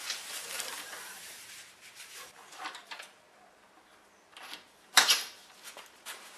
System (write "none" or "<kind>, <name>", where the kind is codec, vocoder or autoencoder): vocoder, BigVGAN v2